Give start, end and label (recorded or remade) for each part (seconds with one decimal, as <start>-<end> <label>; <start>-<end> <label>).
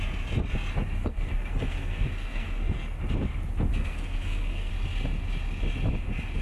0.0-1.0 recorded; 1.0-3.0 remade; 3.0-3.7 recorded; 3.7-4.7 remade; 4.7-6.4 recorded